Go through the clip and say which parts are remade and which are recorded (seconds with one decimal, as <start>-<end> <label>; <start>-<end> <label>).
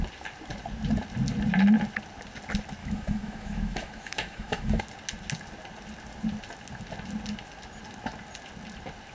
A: 0.0-2.8 recorded; 2.8-4.8 remade; 4.8-9.1 recorded